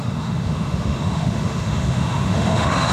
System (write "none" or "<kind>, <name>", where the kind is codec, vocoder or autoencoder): autoencoder, DAC-VAE